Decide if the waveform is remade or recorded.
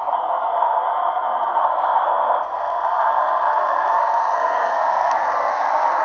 remade